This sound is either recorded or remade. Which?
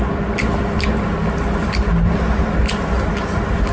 recorded